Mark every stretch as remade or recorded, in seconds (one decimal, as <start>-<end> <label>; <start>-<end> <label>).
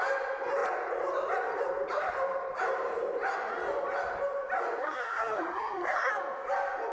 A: 0.0-4.8 recorded; 4.8-6.1 remade; 6.1-6.9 recorded